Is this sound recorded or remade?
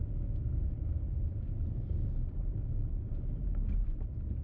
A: recorded